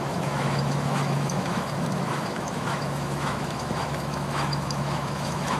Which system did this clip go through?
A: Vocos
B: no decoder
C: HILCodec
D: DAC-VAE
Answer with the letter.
D